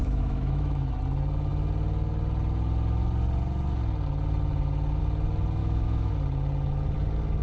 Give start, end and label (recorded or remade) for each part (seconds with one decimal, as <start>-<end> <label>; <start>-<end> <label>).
0.0-0.9 remade; 0.9-5.6 recorded; 5.6-6.1 remade; 6.1-7.4 recorded